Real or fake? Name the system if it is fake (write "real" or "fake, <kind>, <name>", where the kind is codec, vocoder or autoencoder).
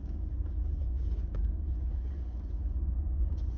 fake, vocoder, Vocos